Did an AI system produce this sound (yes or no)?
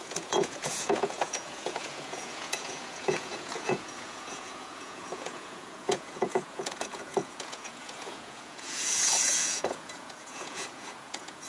yes